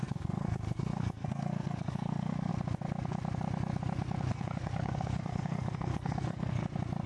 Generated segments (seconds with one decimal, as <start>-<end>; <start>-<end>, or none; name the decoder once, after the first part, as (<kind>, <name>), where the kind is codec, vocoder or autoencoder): 0.0-2.5 (codec, SNAC); 4.3-6.6

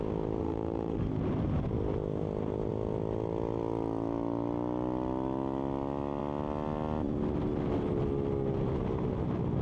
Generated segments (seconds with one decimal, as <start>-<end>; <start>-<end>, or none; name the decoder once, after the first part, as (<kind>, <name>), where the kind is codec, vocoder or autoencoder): 0.4-1.1 (autoencoder, DAC-VAE)

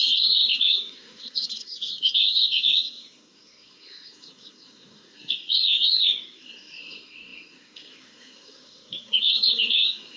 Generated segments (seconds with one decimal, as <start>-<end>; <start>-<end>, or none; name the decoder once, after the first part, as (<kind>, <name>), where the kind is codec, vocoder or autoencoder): 0.0-10.2 (codec, SNAC)

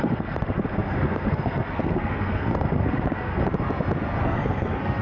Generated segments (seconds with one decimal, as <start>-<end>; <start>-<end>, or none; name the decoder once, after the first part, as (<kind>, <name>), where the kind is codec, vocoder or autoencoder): 0.0-3.4 (codec, SNAC); 4.2-5.0

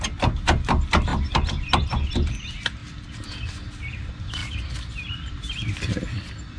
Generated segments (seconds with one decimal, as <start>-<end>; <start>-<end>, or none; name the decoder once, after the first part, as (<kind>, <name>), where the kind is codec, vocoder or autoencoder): 0.0-2.8 (vocoder, BigVGAN v2); 3.9-4.4; 5.3-6.6

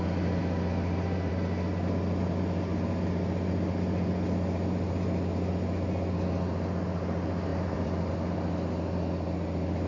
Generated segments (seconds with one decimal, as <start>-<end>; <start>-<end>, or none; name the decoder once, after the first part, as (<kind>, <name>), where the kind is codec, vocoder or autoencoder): 7.5-8.1 (vocoder, BigVGAN v2)

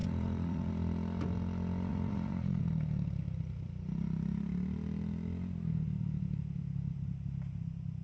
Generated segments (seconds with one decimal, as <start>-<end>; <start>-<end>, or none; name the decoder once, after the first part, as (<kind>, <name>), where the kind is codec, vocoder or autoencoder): 0.0-0.7 (vocoder, Vocos); 1.9-2.6